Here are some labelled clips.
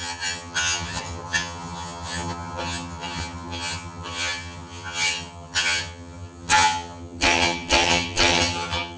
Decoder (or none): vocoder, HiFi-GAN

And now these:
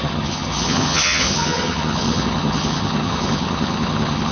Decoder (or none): vocoder, HiFi-GAN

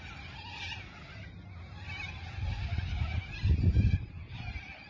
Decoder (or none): none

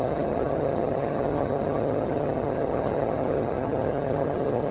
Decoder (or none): vocoder, HiFi-GAN